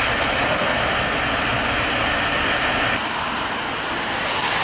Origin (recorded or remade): recorded